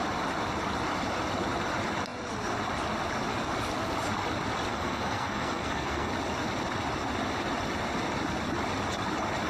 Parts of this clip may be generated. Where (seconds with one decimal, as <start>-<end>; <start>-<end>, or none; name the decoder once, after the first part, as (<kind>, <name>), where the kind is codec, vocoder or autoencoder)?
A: 4.7-6.1 (codec, SNAC)